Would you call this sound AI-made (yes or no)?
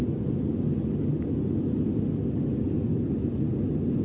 no